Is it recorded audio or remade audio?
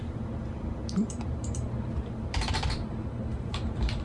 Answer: remade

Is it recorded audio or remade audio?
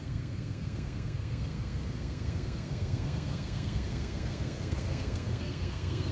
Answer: remade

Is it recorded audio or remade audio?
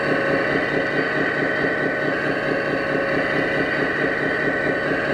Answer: recorded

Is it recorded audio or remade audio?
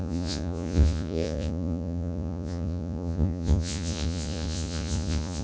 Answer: remade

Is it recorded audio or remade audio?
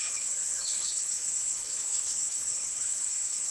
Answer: remade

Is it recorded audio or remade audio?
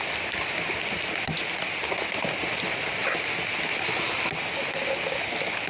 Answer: recorded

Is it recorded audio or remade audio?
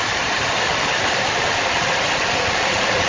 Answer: recorded